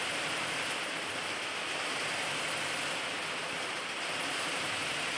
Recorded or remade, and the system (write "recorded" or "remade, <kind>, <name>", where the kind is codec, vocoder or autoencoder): remade, vocoder, BigVGAN v2